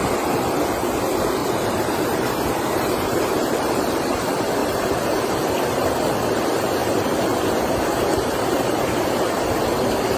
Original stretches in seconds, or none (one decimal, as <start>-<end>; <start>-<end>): 0.0-1.4; 3.9-4.6; 5.1-10.2